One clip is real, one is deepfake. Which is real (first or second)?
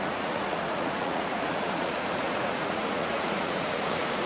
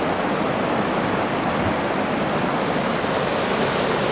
second